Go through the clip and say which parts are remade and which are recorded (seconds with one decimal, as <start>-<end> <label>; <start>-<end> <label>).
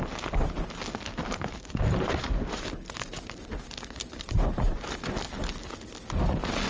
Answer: 0.0-1.1 recorded; 1.1-5.0 remade; 5.0-6.7 recorded